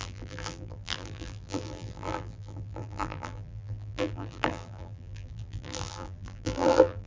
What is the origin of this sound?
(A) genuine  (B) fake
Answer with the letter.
B